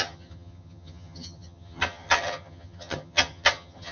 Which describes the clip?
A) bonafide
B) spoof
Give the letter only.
B